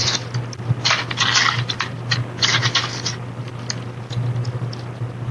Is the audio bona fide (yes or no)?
yes